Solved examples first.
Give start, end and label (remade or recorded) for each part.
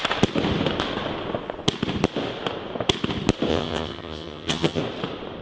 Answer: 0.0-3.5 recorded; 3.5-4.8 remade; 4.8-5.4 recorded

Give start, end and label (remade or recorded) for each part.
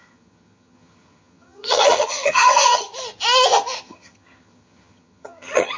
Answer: 0.0-2.9 remade; 2.9-3.8 recorded; 3.8-5.8 remade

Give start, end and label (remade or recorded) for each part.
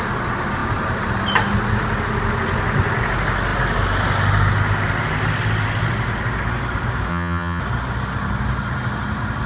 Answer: 0.0-7.1 recorded; 7.1-7.6 remade; 7.6-9.5 recorded